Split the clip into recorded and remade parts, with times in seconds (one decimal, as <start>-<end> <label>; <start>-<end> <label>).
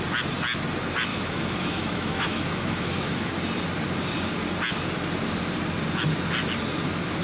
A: 0.0-1.1 recorded; 1.1-3.3 remade; 3.3-7.2 recorded